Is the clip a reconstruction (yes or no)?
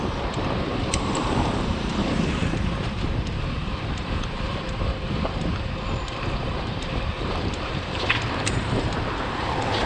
yes